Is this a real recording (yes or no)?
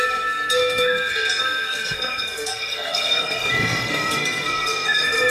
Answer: no